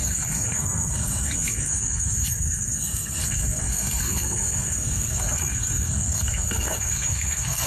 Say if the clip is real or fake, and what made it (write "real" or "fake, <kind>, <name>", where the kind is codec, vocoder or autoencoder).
fake, codec, SNAC